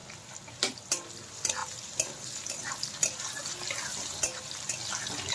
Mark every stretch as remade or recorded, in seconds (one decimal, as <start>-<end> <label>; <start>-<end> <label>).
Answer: 0.0-5.3 remade